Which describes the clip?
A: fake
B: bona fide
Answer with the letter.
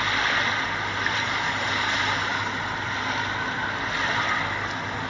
B